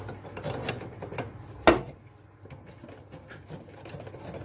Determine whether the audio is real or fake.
real